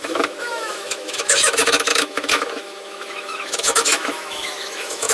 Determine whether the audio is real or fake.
fake